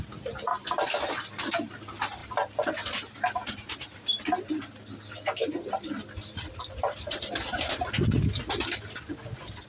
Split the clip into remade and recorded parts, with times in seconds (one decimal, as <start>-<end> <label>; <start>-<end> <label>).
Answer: 0.0-0.5 recorded; 0.5-1.1 remade; 1.1-2.2 recorded; 2.2-2.9 remade; 2.9-5.4 recorded; 5.4-7.9 remade; 7.9-9.7 recorded